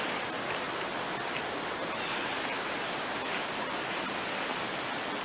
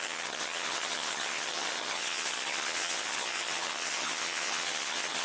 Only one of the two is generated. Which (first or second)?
second